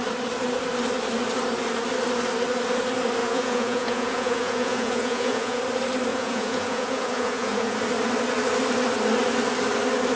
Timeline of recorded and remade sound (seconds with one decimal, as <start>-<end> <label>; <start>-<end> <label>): 0.0-3.2 recorded; 3.2-5.6 remade; 5.6-6.1 recorded; 6.1-7.8 remade; 7.8-10.2 recorded